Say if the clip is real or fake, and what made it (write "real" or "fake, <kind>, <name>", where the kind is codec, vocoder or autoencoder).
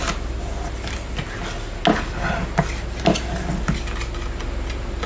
real